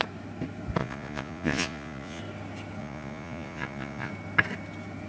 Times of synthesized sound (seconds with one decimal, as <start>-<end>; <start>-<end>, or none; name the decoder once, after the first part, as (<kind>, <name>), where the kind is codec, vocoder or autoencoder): 0.8-2.2 (vocoder, Vocos); 2.8-4.1